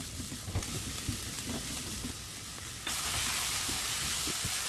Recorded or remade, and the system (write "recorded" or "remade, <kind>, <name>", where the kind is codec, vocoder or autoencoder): recorded